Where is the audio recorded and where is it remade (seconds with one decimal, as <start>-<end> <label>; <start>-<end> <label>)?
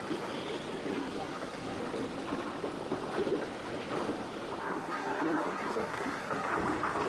0.0-0.9 recorded; 0.9-1.8 remade; 1.8-4.6 recorded; 4.6-6.5 remade; 6.5-7.1 recorded